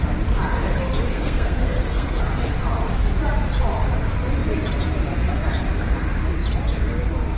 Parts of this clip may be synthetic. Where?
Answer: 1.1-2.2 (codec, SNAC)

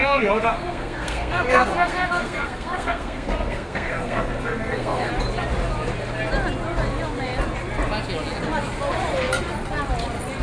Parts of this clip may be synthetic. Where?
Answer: 0.0-5.1 (codec, SNAC)

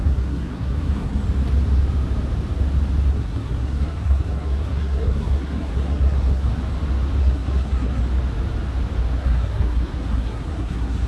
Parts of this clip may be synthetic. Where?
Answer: 0.0-1.2 (codec, SNAC); 3.1-6.5; 7.2-8.0; 9.2-11.1

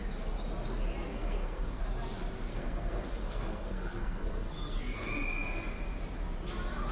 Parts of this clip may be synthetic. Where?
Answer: 1.1-1.8 (codec, SNAC); 2.5-5.1

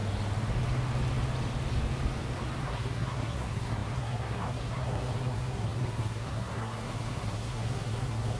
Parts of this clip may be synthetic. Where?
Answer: 2.6-8.4 (codec, SNAC)

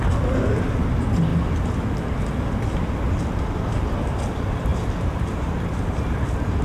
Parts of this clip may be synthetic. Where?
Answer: none

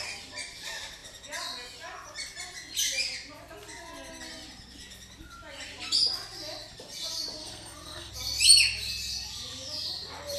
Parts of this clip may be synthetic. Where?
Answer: 7.4-8.1 (codec, SNAC)